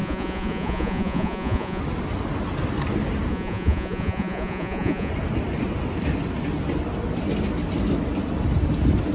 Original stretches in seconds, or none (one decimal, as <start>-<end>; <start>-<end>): 1.8-3.3; 5.1-9.1

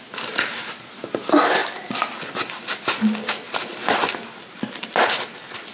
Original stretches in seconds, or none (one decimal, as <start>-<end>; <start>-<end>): 0.0-5.7

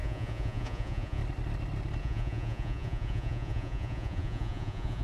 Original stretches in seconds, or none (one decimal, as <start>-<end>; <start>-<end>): 1.2-2.0

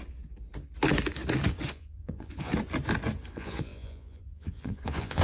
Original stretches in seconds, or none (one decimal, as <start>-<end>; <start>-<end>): 0.0-1.7; 2.5-3.3